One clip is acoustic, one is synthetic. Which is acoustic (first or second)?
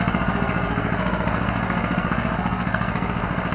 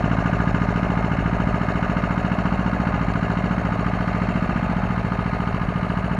second